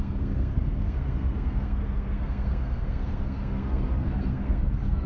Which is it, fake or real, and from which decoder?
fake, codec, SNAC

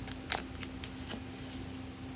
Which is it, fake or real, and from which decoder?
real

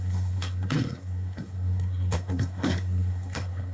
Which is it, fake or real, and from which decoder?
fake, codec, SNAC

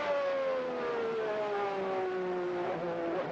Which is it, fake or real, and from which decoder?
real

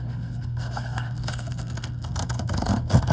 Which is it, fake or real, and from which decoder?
fake, codec, SNAC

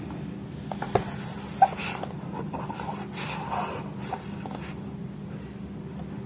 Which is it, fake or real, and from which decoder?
real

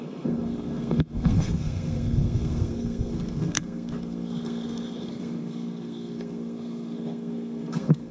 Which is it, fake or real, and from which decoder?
fake, codec, SNAC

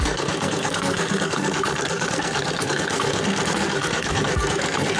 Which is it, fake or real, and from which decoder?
fake, codec, SNAC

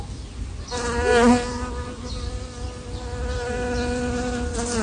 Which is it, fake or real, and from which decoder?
real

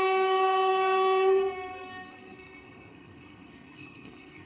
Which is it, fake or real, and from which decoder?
fake, codec, SNAC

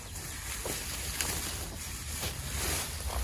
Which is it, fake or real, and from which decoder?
real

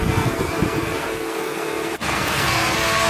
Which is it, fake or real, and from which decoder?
fake, codec, SNAC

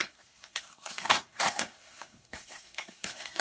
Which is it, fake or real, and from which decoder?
fake, codec, SNAC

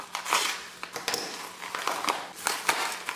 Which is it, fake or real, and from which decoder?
real